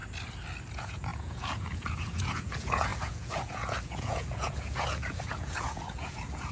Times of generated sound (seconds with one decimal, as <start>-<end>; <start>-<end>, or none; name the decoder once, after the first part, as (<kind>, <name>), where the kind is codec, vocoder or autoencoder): 0.7-6.5 (vocoder, Vocos)